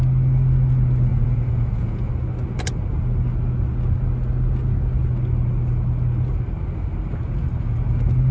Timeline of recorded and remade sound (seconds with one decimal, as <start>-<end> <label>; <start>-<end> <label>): 0.0-1.1 recorded; 1.1-2.1 remade; 2.1-8.3 recorded